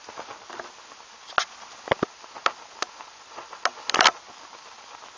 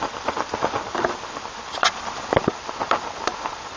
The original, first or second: first